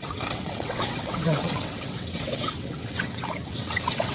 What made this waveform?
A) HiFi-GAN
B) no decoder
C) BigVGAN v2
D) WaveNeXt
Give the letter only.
D